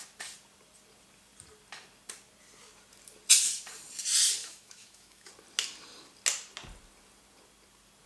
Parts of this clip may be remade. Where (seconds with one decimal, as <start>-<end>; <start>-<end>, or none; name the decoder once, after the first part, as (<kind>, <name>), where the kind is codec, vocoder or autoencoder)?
4.4-5.3 (autoencoder, DAC-VAE)